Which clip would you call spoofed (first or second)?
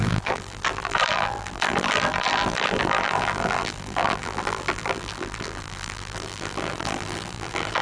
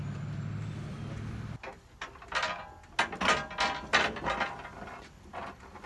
first